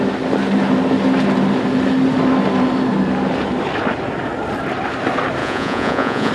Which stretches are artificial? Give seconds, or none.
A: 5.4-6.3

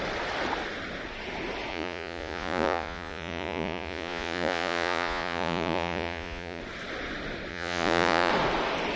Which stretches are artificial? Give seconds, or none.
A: 1.7-6.6; 7.5-8.3